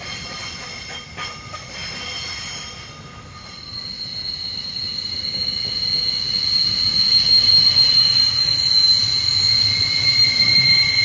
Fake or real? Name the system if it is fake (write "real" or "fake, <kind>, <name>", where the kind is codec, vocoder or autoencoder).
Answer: real